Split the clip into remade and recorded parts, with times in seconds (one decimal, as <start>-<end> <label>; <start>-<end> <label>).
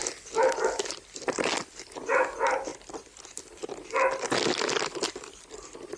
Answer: 0.0-6.0 recorded